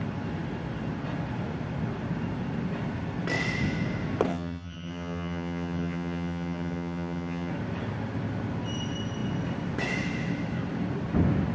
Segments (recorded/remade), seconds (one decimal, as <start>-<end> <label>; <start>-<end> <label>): 0.0-4.3 recorded; 4.3-7.5 remade; 7.5-11.5 recorded